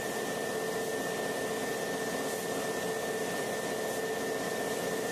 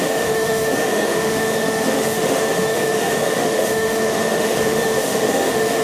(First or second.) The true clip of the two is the first